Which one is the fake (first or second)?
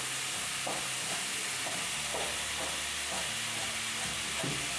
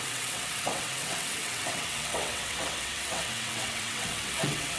second